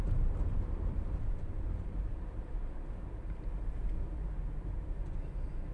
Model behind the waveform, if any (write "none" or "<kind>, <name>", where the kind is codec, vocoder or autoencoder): vocoder, BigVGAN v2